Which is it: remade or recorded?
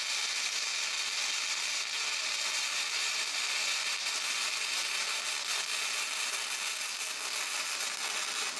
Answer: recorded